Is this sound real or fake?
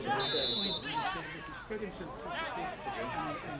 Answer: real